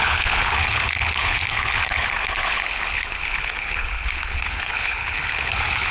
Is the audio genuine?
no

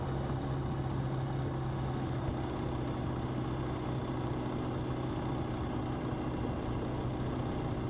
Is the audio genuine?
yes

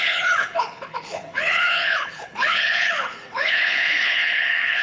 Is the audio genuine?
no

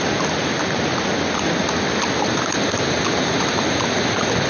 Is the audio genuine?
yes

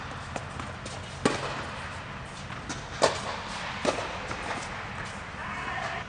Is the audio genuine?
yes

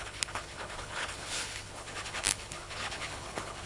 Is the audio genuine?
no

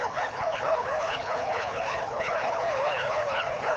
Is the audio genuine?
no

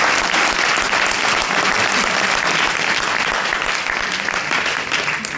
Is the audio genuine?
yes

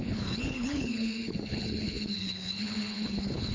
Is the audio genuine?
no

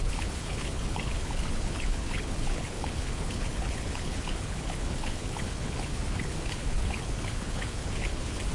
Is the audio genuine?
no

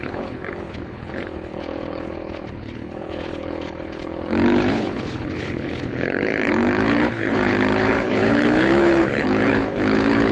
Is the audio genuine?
no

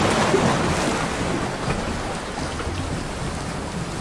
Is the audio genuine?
yes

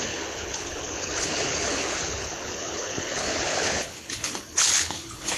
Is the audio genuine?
no